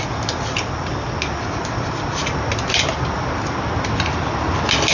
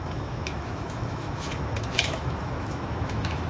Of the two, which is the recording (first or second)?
first